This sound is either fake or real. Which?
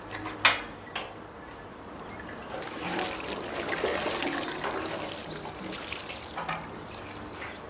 real